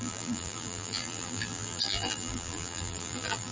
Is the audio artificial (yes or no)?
yes